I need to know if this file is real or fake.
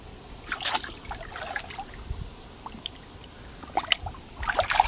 real